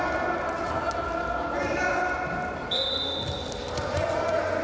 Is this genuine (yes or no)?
yes